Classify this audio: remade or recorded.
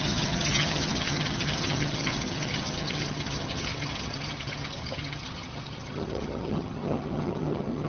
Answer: remade